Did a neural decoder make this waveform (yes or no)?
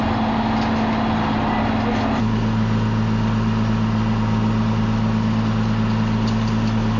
no